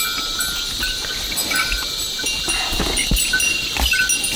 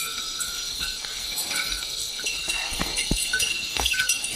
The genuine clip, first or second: first